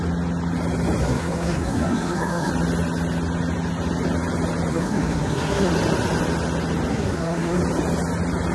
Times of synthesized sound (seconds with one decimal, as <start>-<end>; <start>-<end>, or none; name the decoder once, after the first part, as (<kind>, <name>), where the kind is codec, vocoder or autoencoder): 1.0-2.5 (codec, SNAC); 4.7-5.7; 6.9-7.6